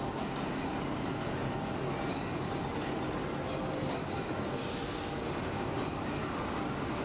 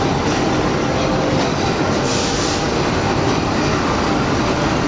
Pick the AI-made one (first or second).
second